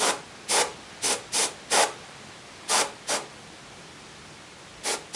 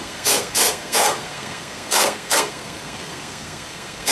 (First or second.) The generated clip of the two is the second